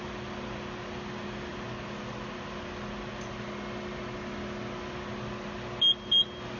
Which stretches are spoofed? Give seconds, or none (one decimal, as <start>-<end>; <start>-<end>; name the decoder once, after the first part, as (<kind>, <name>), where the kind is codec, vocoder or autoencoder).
none